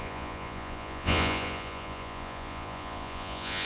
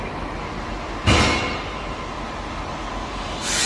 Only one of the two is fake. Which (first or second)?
first